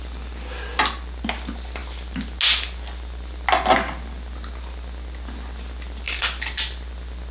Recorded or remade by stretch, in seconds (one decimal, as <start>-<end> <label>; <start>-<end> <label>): 0.0-7.3 recorded